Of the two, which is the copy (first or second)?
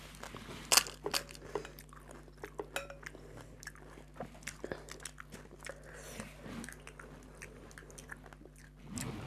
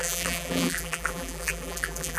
second